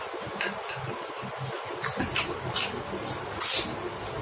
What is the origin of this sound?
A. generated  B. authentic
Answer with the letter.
B